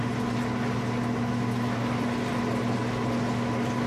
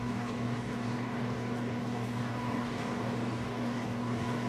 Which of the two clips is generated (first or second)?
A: second